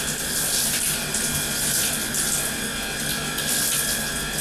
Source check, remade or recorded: recorded